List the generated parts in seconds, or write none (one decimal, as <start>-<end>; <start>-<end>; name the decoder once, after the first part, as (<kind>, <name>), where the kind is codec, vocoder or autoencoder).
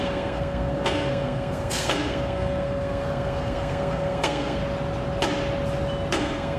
0.0-4.6 (codec, SNAC); 6.1-6.6